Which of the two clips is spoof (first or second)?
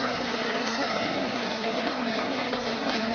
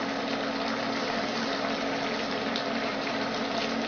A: first